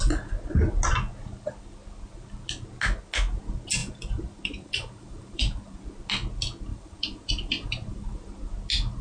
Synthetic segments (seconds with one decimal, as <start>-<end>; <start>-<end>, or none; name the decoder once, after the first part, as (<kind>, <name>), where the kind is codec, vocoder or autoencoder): 3.8-5.8 (vocoder, BigVGAN v2); 6.7-8.4